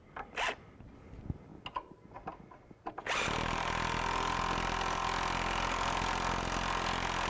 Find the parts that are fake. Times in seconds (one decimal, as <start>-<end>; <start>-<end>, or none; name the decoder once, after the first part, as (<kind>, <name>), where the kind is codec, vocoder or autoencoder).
none